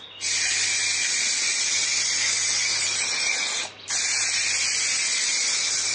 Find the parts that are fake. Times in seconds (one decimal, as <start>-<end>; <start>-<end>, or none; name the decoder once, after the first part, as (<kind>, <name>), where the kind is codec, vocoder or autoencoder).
none

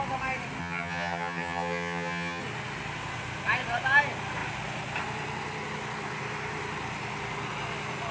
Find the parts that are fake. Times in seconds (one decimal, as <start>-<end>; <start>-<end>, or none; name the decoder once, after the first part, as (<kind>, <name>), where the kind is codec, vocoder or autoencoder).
0.6-2.4 (vocoder, HiFi-GAN)

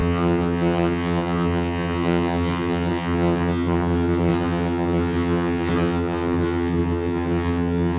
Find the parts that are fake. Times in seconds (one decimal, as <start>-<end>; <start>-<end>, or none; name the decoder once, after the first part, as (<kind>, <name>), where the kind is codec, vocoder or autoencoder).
0.0-8.0 (vocoder, HiFi-GAN)